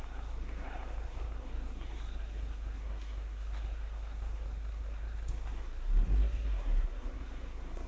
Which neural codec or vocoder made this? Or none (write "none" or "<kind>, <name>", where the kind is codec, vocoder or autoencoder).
codec, SNAC